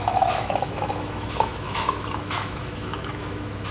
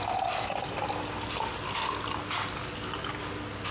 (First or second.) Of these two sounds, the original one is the second